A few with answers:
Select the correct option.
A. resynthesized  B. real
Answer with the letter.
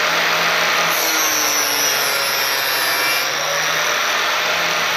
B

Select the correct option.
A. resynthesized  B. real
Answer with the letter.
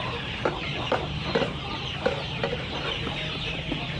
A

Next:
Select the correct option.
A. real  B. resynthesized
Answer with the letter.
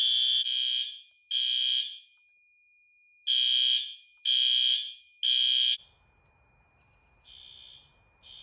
A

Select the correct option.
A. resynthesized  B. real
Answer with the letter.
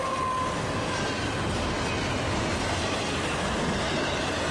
B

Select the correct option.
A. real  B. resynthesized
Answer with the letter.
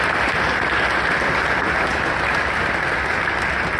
A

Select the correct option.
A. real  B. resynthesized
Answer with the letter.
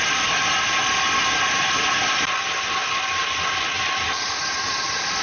A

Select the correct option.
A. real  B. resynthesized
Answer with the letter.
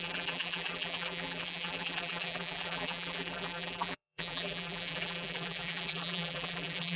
B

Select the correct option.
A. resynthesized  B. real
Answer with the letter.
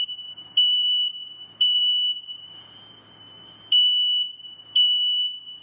A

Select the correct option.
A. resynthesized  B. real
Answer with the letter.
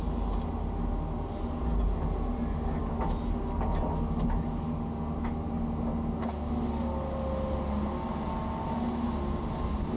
B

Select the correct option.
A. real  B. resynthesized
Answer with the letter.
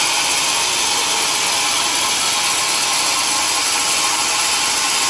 A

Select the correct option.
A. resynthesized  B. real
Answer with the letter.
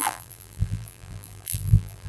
A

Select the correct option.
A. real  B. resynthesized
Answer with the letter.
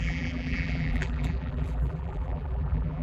B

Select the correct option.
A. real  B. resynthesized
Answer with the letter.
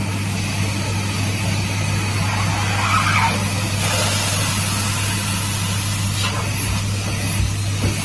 A